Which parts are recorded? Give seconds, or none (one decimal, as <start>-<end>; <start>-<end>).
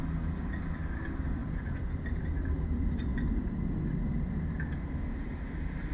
0.0-1.4; 2.2-5.9